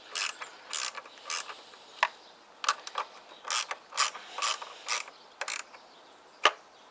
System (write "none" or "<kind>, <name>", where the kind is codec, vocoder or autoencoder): none